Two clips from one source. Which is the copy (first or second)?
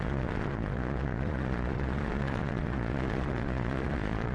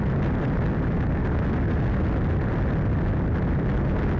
first